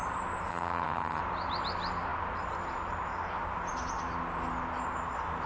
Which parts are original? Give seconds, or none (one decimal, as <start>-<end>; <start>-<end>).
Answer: 0.0-0.5; 1.2-5.5